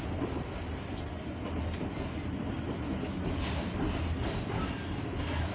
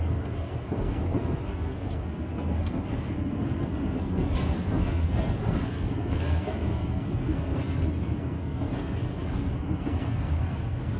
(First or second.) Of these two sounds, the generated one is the second